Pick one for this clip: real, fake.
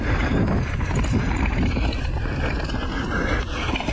real